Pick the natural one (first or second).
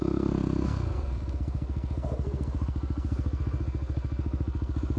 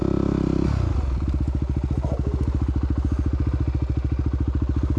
second